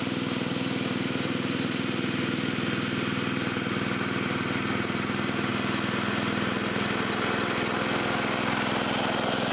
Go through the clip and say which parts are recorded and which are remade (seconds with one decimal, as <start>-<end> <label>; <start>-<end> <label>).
0.0-9.5 recorded